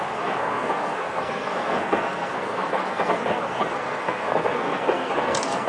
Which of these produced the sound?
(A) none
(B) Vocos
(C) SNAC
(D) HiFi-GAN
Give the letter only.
C